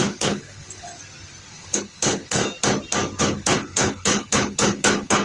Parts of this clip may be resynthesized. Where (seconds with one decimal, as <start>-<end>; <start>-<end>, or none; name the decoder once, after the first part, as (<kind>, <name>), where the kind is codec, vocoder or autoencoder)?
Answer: 0.0-0.9 (codec, HILCodec); 1.5-2.4; 3.2-5.2